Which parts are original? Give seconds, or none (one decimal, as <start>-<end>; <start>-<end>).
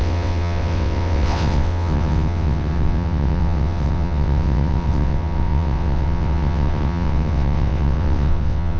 none